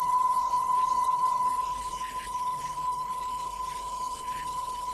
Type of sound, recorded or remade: remade